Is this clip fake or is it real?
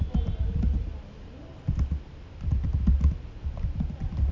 real